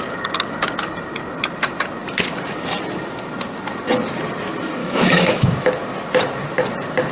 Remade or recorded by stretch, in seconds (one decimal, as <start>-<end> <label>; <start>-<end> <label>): 0.0-4.8 recorded; 4.8-5.7 remade; 5.7-7.1 recorded